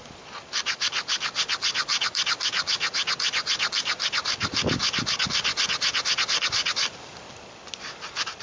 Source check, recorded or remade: recorded